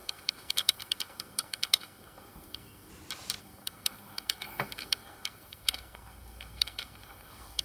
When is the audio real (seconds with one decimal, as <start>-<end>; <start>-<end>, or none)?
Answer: 2.9-3.4